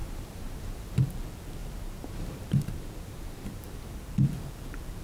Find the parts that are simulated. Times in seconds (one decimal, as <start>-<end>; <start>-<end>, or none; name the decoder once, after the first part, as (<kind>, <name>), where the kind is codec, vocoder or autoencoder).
0.0-1.0 (vocoder, BigVGAN v2); 1.6-4.1